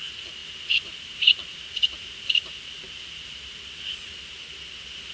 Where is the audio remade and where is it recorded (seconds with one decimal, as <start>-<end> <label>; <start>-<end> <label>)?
0.0-0.4 recorded; 0.4-3.4 remade; 3.4-5.1 recorded